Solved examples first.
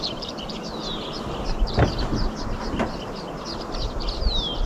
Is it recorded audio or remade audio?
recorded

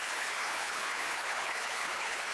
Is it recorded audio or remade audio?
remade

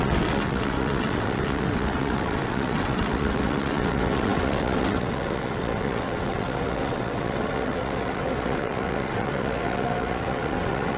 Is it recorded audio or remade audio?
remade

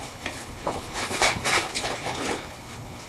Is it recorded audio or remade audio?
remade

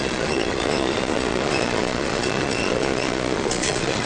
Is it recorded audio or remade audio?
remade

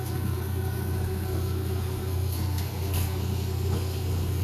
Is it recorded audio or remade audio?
remade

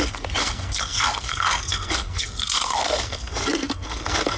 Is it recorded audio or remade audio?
remade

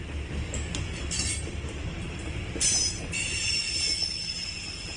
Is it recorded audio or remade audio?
recorded